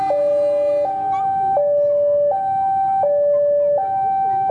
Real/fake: real